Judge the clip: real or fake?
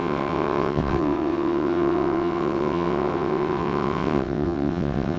fake